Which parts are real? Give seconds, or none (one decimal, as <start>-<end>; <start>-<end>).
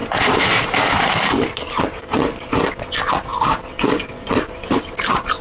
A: 1.8-3.3; 4.8-5.4